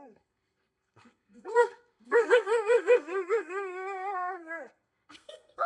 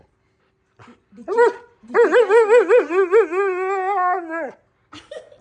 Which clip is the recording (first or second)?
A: second